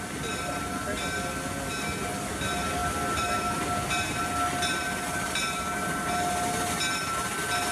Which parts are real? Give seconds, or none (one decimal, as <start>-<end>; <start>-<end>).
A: 0.0-7.7